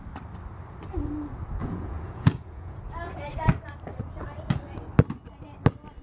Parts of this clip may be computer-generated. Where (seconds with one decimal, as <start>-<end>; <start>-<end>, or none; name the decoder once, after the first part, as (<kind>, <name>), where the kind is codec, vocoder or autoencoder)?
1.6-2.8 (vocoder, Vocos)